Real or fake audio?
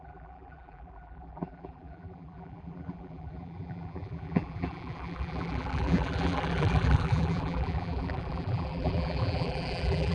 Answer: fake